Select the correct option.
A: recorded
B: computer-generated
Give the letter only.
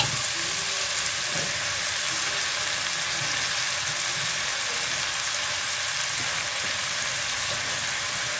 A